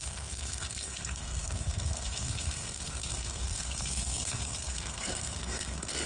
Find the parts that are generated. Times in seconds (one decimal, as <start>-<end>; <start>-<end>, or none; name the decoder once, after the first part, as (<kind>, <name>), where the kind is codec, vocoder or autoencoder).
0.0-6.1 (codec, SNAC)